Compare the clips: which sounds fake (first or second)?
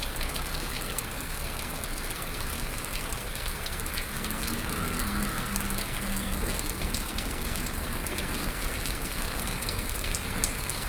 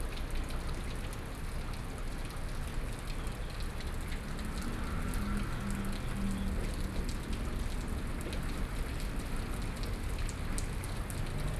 first